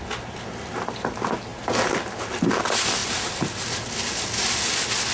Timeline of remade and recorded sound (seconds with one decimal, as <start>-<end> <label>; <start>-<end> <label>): 0.0-5.1 recorded